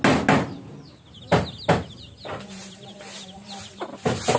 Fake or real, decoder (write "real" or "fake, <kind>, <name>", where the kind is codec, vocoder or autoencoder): real